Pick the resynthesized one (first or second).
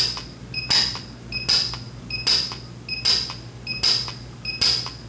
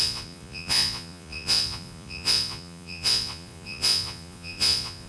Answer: second